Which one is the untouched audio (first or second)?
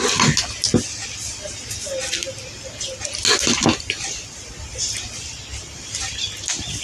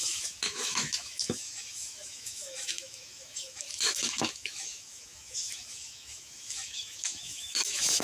first